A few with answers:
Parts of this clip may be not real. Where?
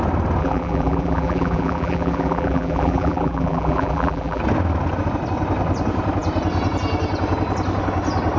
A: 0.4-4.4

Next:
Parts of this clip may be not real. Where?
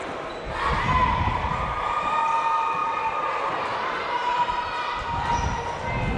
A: 2.8-3.3; 3.7-4.6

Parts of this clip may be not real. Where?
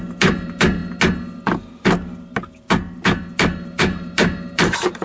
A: 0.0-0.8; 3.3-5.0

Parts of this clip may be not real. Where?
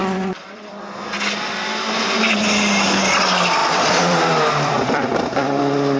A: 0.0-0.8; 3.6-5.6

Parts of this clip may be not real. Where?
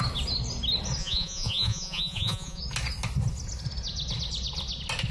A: 1.0-2.6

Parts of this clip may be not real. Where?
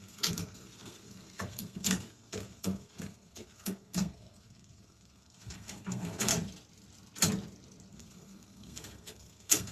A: 0.0-6.3; 7.9-9.7